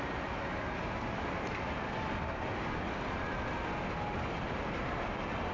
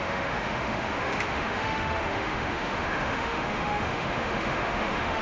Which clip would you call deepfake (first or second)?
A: second